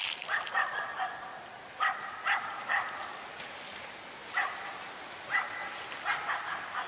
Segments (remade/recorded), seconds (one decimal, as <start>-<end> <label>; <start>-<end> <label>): 0.0-6.9 recorded